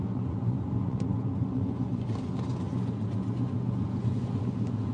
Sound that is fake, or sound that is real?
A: fake